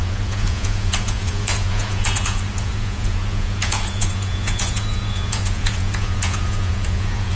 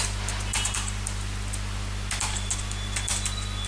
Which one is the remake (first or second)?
first